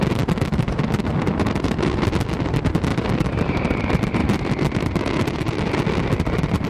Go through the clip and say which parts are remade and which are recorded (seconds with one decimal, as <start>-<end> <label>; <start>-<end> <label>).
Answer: 0.0-6.7 recorded